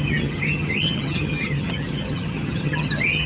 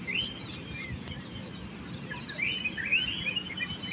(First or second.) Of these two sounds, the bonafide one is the second